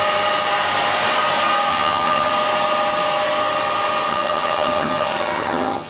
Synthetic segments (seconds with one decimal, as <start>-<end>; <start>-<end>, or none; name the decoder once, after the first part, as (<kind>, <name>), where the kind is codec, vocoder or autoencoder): 1.7-2.3 (vocoder, HiFi-GAN); 4.1-5.9